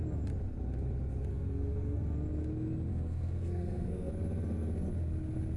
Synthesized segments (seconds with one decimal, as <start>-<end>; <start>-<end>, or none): 1.3-2.0; 2.9-4.1